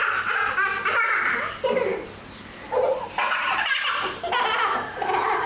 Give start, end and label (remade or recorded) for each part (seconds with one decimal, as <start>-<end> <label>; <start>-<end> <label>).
0.0-5.5 recorded